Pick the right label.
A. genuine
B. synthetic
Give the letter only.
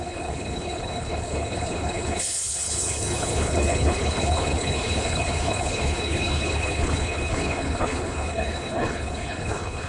B